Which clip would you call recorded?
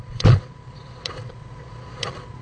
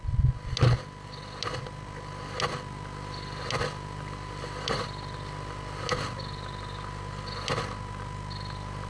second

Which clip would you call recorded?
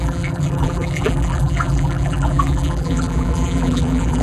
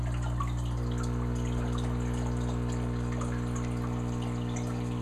second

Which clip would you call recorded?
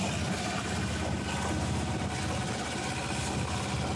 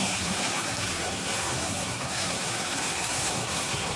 first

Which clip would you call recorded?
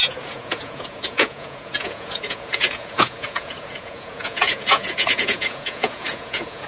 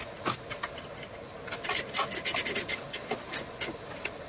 second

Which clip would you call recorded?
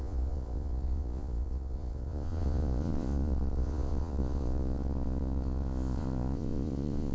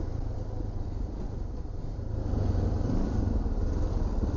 second